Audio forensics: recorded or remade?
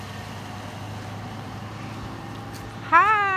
recorded